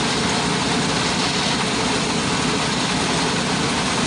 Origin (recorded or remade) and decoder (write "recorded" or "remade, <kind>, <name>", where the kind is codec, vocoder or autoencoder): recorded